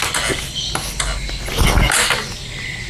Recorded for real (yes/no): yes